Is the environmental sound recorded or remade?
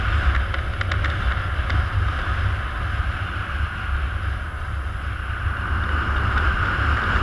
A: recorded